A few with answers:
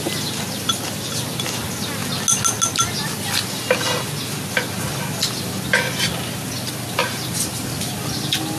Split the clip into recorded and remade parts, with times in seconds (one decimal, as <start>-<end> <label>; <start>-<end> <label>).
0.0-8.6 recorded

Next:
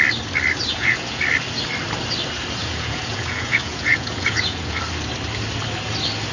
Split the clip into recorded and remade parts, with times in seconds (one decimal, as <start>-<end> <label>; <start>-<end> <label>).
0.0-0.7 recorded; 0.7-1.2 remade; 1.2-2.6 recorded; 2.6-4.8 remade; 4.8-6.3 recorded

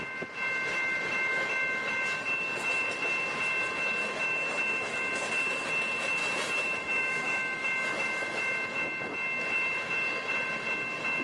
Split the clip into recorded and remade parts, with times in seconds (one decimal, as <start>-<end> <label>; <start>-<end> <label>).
0.0-4.0 recorded; 4.0-4.9 remade; 4.9-6.2 recorded; 6.2-7.7 remade; 7.7-11.2 recorded

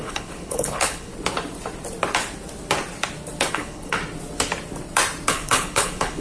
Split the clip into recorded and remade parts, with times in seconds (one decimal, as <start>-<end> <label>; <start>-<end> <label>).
0.0-1.1 remade; 1.1-3.5 recorded; 3.5-4.0 remade; 4.0-5.3 recorded; 5.3-6.2 remade

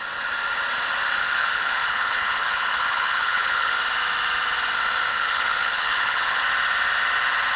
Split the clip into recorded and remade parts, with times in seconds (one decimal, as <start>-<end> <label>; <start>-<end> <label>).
0.0-1.2 recorded; 1.2-3.7 remade; 3.7-5.1 recorded; 5.1-6.4 remade; 6.4-7.6 recorded